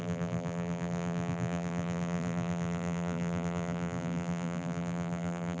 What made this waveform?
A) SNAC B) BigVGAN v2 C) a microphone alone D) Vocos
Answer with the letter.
B